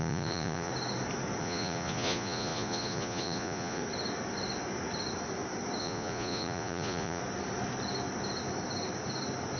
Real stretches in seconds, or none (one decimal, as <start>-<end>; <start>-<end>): 0.7-1.4; 3.8-5.8; 7.2-9.6